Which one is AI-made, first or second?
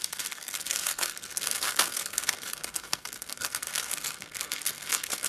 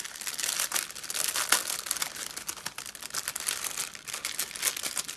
first